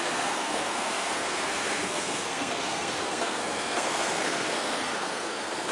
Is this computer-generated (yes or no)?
yes